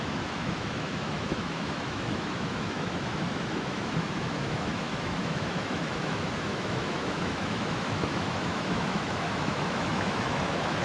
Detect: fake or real fake